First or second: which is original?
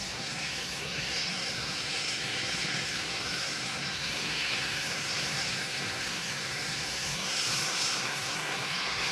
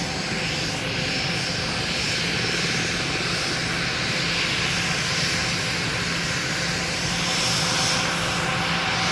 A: second